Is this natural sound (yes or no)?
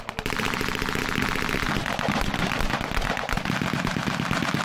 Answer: yes